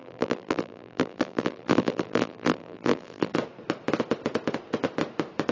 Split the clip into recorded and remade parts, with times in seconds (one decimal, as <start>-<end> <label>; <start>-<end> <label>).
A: 0.0-3.3 remade; 3.3-5.5 recorded